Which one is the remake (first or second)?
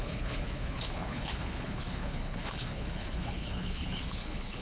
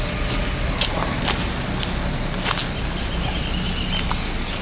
first